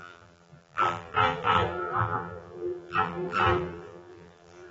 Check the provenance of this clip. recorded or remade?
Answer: remade